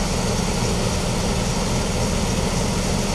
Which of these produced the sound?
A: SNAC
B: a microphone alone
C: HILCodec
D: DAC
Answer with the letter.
B